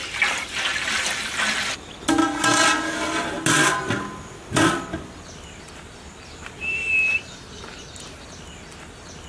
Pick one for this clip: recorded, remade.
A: recorded